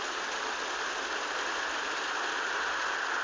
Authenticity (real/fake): real